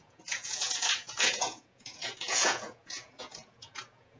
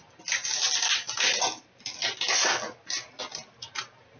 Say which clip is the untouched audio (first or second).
second